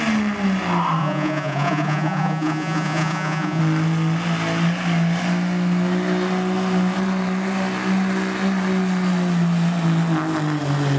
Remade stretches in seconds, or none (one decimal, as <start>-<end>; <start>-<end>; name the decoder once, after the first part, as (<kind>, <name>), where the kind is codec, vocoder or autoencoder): 1.0-3.6 (vocoder, Vocos)